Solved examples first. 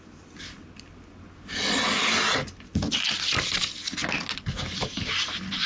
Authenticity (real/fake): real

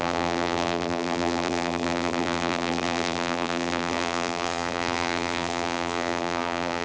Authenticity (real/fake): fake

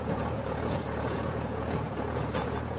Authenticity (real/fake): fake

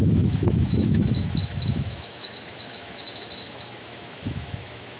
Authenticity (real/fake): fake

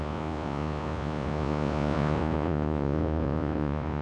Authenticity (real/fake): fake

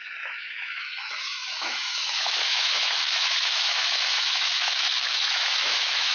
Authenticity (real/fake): fake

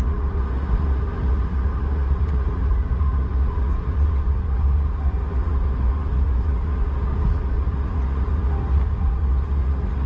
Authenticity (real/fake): fake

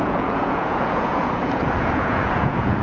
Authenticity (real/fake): fake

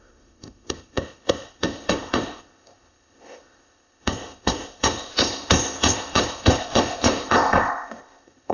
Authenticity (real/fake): fake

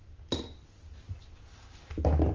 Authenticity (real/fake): real